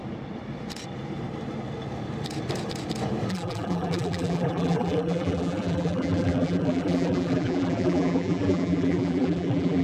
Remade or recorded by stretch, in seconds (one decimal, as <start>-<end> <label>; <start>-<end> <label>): 0.0-3.3 recorded; 3.3-9.8 remade